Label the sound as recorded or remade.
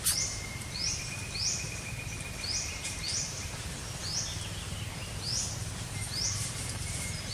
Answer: remade